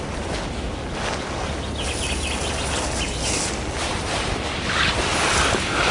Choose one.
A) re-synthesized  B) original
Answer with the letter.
B